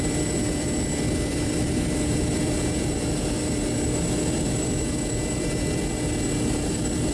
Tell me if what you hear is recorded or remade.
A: remade